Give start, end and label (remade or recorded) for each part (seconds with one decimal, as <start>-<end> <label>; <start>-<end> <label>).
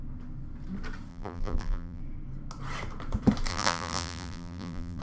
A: 0.0-1.1 recorded; 1.1-2.0 remade; 2.0-3.5 recorded; 3.5-5.0 remade